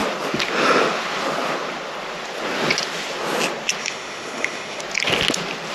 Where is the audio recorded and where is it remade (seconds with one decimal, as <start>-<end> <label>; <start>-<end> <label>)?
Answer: 0.0-3.8 recorded; 3.8-4.8 remade; 4.8-5.7 recorded

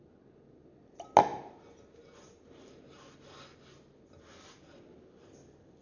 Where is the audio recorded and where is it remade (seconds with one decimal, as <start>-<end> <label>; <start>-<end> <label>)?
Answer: 0.0-5.8 recorded

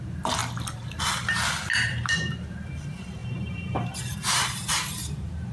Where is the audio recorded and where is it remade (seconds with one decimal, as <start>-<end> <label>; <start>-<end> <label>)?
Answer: 0.0-0.4 remade; 0.4-1.9 recorded; 1.9-5.5 remade

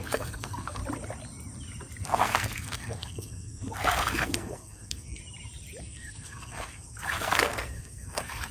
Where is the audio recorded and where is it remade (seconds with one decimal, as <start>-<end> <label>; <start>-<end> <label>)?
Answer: 0.0-0.8 remade; 0.8-2.0 recorded; 2.0-5.2 remade; 5.2-5.8 recorded; 5.8-8.5 remade

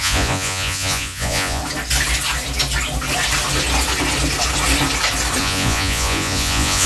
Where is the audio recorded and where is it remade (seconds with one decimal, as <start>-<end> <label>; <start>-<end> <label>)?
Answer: 0.0-1.6 remade; 1.6-5.4 recorded; 5.4-6.9 remade

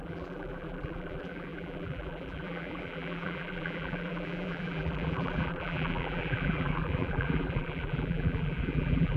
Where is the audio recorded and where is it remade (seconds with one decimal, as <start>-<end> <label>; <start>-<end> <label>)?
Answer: 0.0-9.2 remade

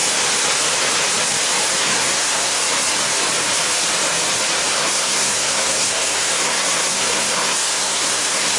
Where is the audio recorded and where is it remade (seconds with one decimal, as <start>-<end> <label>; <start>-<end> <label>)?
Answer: 0.0-1.8 recorded; 1.8-2.6 remade; 2.6-4.7 recorded; 4.7-8.6 remade